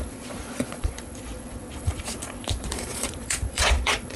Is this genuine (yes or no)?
no